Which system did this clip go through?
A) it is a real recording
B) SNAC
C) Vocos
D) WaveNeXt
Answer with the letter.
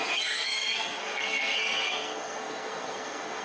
B